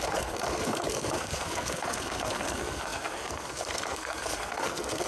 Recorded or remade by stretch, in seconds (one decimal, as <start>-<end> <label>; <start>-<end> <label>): 0.0-5.1 remade